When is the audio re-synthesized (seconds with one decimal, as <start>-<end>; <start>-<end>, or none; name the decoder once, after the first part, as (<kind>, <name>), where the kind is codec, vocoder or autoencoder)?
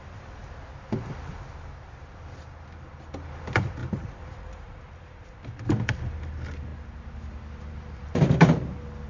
0.0-9.1 (vocoder, BigVGAN v2)